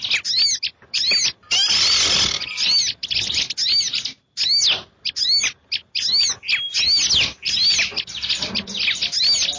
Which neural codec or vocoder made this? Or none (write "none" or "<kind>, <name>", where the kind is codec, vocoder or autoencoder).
none